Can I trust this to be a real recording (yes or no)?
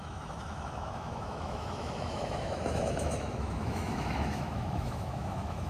no